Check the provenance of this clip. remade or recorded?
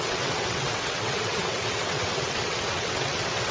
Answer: remade